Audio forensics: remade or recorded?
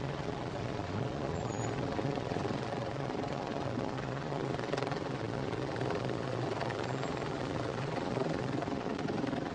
remade